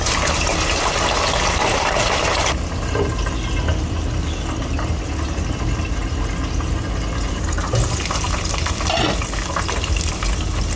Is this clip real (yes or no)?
yes